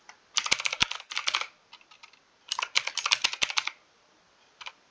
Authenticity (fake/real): real